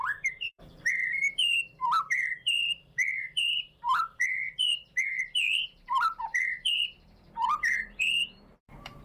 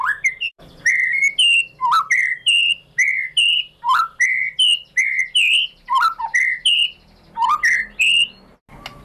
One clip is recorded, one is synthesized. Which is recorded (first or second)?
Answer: second